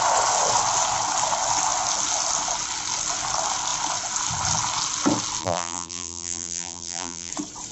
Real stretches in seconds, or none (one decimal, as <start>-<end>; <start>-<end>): 0.0-5.4; 7.3-7.7